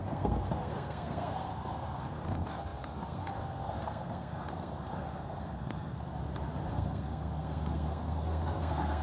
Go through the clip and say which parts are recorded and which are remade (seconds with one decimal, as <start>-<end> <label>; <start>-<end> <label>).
0.0-6.1 remade; 6.1-6.7 recorded; 6.7-9.0 remade

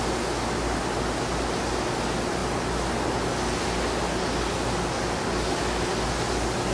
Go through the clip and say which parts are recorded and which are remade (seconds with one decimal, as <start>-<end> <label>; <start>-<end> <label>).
0.0-6.7 recorded